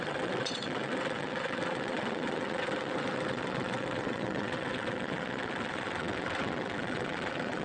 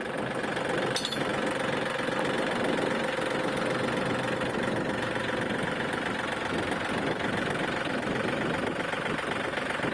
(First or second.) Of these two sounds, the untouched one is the second